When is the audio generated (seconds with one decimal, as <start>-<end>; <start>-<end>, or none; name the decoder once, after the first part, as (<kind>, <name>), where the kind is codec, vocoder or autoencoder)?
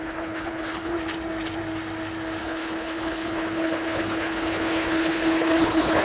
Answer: 0.0-0.9 (codec, HILCodec); 2.4-6.0